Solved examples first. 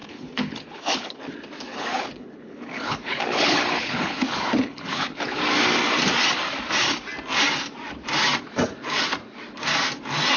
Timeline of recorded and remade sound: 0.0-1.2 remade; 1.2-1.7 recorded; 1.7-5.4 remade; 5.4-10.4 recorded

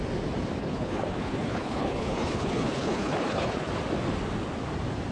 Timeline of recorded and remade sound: 0.0-0.6 recorded; 0.6-3.7 remade; 3.7-5.1 recorded

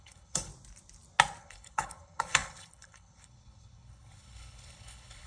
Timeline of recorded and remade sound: 0.0-0.5 remade; 0.5-1.4 recorded; 1.4-5.3 remade